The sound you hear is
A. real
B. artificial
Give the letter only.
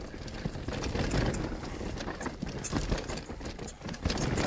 A